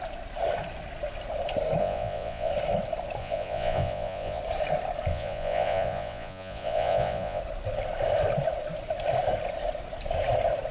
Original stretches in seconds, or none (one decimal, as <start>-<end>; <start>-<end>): 0.0-1.8; 2.5-3.2; 4.4-5.1; 7.4-10.7